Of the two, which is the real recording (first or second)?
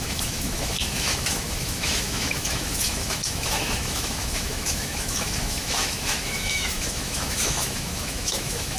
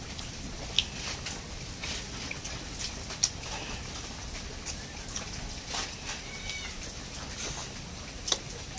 second